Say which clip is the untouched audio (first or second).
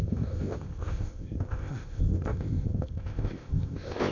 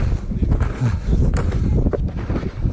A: second